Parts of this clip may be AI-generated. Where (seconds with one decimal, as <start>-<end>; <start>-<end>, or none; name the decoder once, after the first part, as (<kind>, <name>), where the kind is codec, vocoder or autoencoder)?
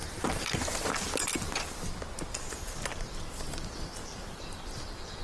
2.5-5.2 (vocoder, BigVGAN v2)